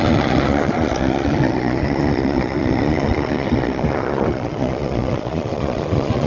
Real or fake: fake